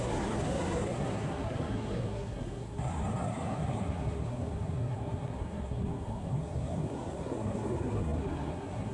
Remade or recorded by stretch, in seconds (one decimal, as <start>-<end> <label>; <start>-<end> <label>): 0.0-8.9 remade